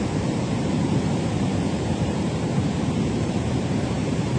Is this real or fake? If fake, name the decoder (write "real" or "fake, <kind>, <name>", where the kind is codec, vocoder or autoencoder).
fake, vocoder, BigVGAN v2